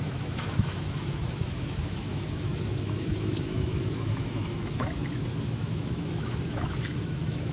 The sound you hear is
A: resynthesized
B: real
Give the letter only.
A